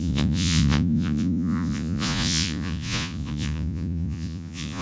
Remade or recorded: remade